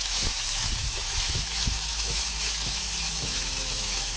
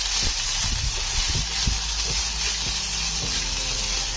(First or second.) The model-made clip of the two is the first